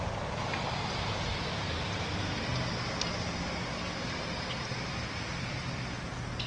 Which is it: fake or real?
real